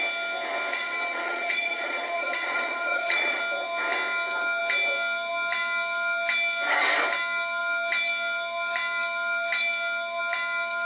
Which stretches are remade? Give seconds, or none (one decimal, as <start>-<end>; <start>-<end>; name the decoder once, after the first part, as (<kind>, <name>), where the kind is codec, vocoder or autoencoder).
0.7-3.4 (vocoder, Vocos)